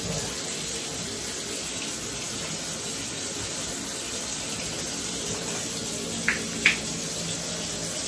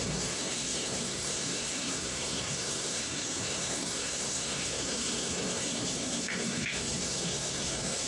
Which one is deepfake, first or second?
second